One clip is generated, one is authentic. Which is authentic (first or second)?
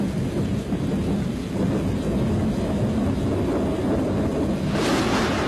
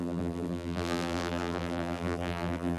first